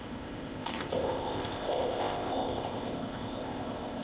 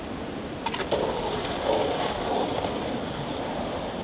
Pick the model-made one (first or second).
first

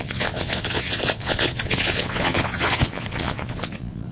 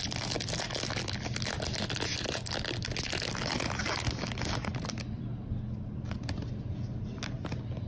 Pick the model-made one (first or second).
first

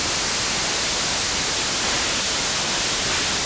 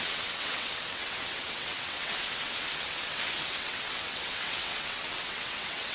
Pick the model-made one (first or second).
second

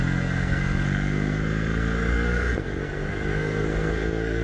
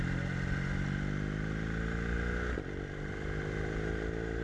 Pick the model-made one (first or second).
first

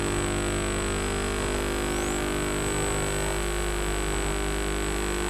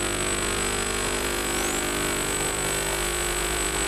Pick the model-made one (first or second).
second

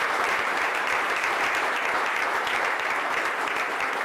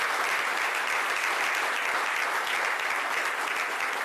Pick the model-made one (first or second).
first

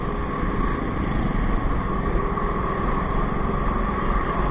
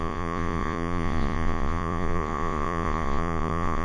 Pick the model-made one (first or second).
second